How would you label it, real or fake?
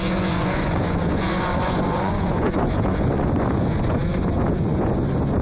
fake